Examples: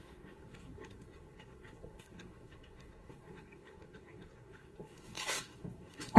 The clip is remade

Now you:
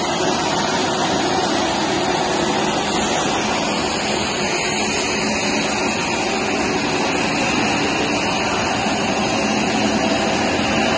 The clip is recorded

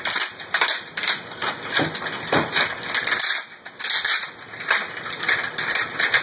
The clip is recorded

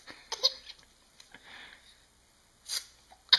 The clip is recorded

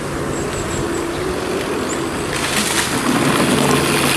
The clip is recorded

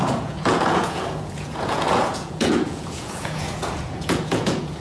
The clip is remade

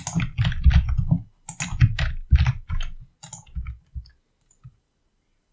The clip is recorded